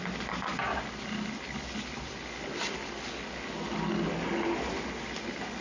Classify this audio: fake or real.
real